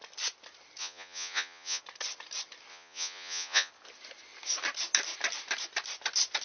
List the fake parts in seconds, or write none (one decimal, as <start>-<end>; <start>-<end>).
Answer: 0.8-1.8; 2.7-3.7